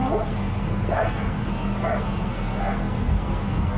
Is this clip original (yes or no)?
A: no